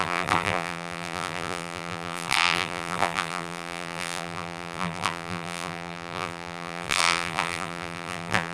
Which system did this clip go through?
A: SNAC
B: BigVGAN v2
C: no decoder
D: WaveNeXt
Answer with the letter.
B